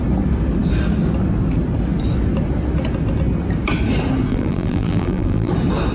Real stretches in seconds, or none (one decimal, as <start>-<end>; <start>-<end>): 0.0-4.3; 5.5-5.9